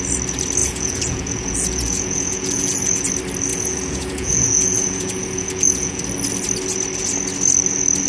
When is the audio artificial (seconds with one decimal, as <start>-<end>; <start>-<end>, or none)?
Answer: 0.6-3.1; 3.5-6.0